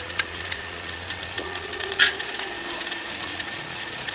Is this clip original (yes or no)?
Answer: no